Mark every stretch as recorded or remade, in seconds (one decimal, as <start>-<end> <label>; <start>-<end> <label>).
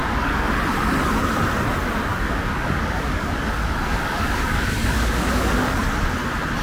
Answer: 0.0-0.5 remade; 0.5-2.1 recorded; 2.1-5.8 remade; 5.8-6.6 recorded